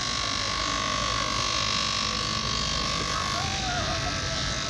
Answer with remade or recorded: recorded